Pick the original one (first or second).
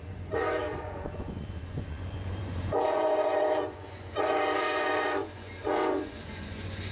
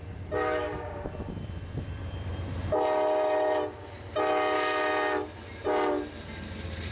second